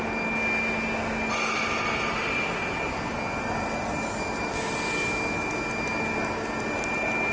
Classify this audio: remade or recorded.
recorded